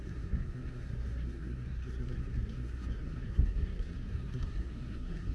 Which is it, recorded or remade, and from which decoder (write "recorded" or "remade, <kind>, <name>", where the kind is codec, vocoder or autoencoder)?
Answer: remade, codec, SNAC